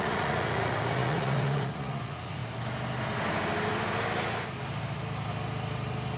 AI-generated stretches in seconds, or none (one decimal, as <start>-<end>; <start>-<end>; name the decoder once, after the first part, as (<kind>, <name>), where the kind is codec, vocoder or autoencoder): 0.0-2.4 (vocoder, Vocos)